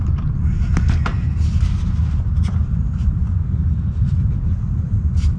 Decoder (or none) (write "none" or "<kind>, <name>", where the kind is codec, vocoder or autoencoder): none